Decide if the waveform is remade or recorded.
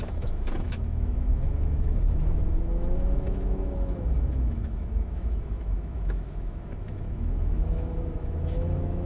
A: remade